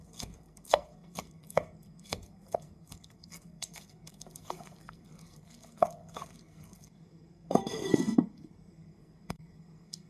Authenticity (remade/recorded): remade